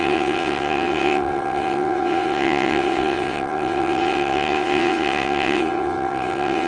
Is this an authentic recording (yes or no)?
no